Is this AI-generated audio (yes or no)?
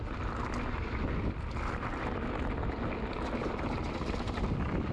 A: no